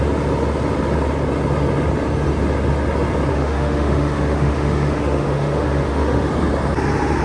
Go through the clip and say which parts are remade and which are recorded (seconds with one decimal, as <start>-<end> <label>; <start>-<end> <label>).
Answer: 0.0-3.3 recorded; 3.3-6.3 remade; 6.3-7.2 recorded